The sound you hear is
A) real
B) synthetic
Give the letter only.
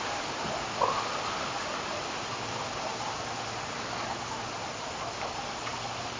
A